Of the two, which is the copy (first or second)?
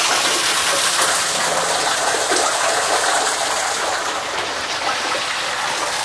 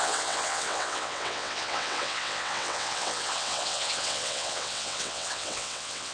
second